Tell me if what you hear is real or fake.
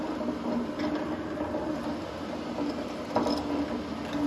real